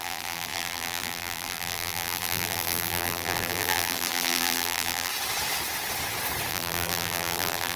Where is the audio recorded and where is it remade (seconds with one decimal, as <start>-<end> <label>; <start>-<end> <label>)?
0.0-5.1 remade; 5.1-6.5 recorded; 6.5-7.8 remade